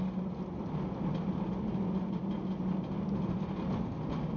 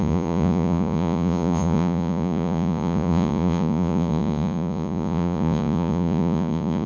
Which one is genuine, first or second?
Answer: first